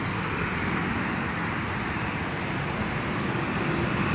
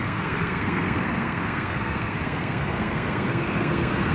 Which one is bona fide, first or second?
first